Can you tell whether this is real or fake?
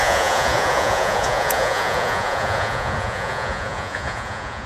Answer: fake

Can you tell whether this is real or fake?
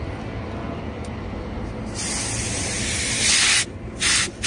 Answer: real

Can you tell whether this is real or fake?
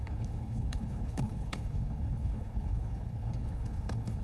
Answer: fake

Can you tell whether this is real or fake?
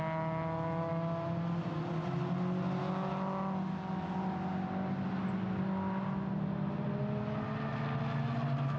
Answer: real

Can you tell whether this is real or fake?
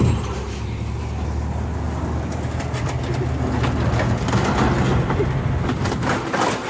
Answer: real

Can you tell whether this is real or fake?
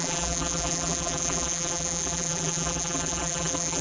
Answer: fake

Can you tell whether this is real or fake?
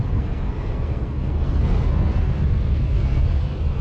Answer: fake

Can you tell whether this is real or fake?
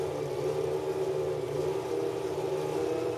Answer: real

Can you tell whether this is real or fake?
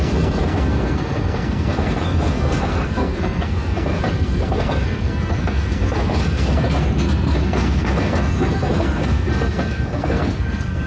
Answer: fake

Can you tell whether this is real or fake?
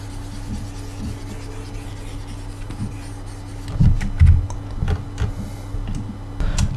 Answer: real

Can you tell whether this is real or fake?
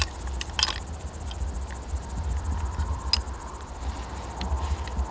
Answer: real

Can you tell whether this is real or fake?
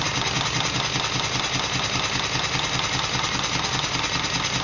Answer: real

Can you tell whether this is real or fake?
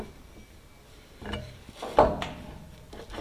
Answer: real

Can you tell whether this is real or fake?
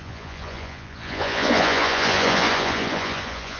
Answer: fake